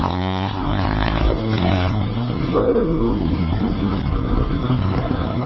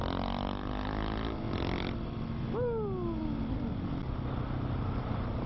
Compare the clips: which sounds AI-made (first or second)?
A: first